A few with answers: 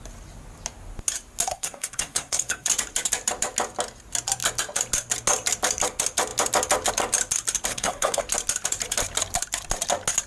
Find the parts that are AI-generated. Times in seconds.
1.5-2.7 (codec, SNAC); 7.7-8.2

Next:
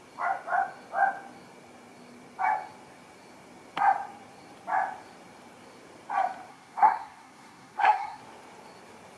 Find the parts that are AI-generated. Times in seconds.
6.5-8.2 (codec, SNAC)